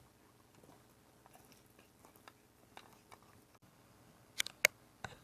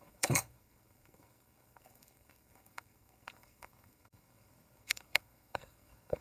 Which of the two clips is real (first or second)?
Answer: first